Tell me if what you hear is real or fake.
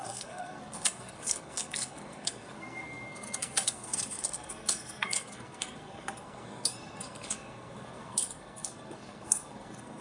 fake